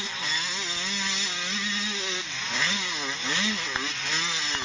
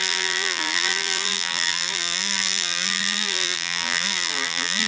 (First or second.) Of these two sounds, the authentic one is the first